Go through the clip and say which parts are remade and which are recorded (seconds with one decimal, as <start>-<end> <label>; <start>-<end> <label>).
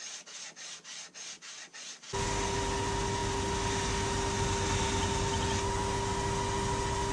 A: 0.0-7.1 recorded